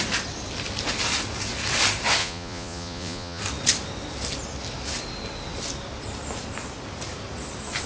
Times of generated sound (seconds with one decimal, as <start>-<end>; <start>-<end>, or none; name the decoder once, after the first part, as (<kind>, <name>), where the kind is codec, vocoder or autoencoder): 2.2-3.4 (vocoder, Vocos)